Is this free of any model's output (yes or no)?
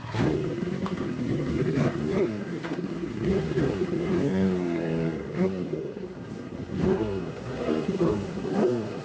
no